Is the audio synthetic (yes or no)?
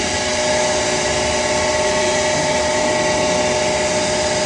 no